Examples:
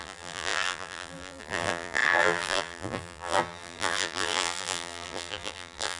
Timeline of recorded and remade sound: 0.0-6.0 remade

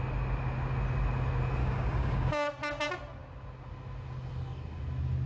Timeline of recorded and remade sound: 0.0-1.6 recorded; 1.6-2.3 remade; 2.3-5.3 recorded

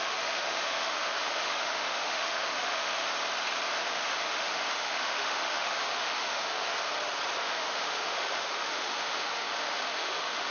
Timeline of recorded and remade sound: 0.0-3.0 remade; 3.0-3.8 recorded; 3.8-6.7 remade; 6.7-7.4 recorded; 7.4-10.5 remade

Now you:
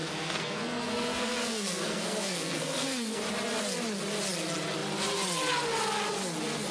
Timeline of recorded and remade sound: 0.0-3.2 remade; 3.2-6.7 recorded

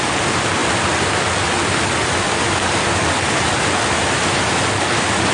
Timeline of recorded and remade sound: 0.0-5.3 recorded

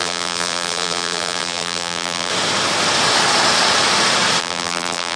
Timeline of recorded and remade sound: 0.0-2.3 remade; 2.3-4.4 recorded; 4.4-5.2 remade

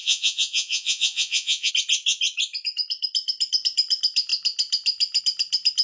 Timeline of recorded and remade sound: 0.0-1.7 remade; 1.7-5.8 recorded